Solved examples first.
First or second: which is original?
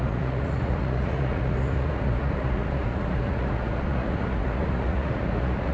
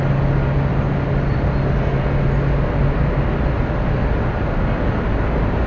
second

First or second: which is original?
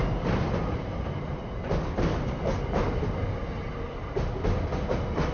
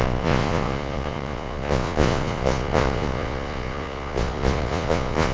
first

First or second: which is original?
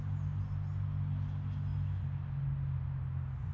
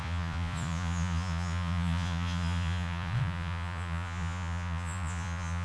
first